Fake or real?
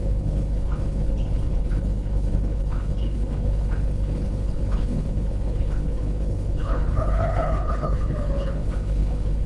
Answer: fake